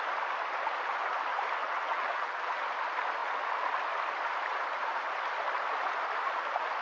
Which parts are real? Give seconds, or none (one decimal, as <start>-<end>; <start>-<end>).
0.0-1.6; 2.6-6.8